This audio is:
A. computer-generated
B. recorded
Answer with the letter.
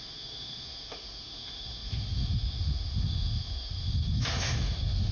A